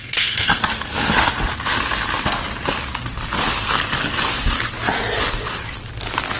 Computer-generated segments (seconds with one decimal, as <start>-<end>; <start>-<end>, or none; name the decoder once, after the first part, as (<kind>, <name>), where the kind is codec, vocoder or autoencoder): 0.0-0.6 (codec, SNAC)